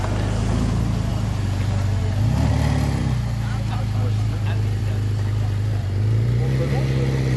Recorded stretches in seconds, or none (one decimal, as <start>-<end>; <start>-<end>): 0.0-7.4